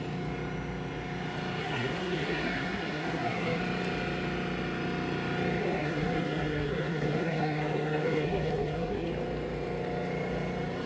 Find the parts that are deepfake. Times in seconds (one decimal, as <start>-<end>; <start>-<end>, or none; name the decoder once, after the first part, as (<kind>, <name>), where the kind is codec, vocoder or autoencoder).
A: 1.6-3.6 (codec, SNAC); 5.6-9.1